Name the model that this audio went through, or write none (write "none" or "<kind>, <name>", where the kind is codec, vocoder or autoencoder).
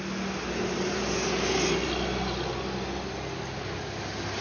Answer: none